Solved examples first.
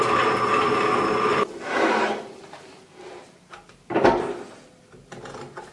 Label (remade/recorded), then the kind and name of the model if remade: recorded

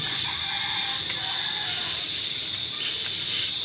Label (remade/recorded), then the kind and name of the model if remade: recorded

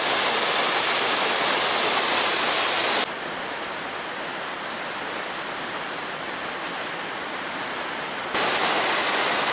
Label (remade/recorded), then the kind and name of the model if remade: recorded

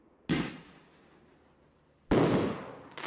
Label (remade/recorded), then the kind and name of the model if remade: recorded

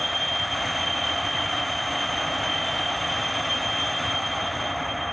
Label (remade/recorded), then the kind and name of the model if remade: recorded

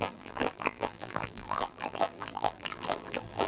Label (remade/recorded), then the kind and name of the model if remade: remade, vocoder, BigVGAN v2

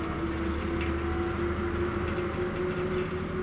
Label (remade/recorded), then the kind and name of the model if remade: recorded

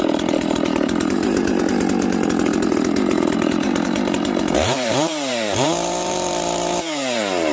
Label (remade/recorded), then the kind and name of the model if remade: remade, vocoder, BigVGAN v2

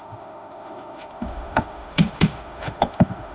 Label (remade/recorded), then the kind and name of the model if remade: remade, autoencoder, DAC-VAE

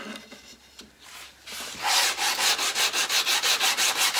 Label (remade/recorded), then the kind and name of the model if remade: recorded